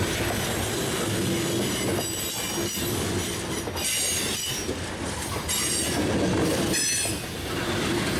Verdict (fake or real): real